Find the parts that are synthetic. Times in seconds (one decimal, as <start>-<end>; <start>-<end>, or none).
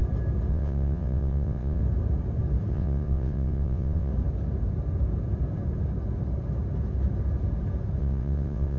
0.5-1.8; 2.7-4.1; 8.0-8.8